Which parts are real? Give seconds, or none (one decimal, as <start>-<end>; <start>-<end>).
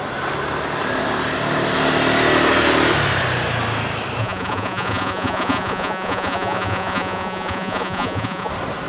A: 0.0-4.2; 8.5-8.9